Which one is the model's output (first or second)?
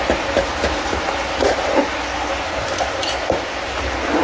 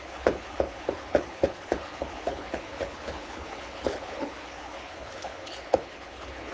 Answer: second